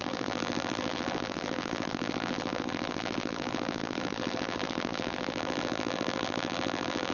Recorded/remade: remade